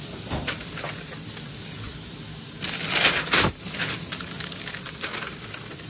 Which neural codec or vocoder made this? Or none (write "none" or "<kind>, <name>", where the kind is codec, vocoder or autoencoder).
vocoder, BigVGAN v2